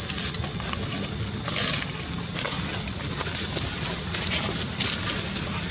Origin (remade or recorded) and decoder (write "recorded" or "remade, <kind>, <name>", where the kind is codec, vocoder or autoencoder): recorded